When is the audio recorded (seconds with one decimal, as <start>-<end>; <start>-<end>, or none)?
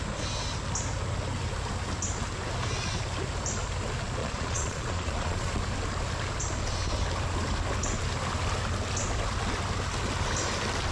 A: 0.0-4.2; 5.6-10.9